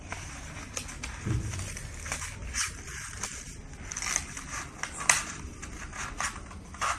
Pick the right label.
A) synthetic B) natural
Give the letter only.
B